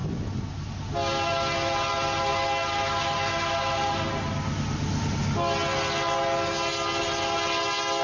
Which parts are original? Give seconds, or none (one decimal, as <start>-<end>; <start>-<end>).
0.0-8.0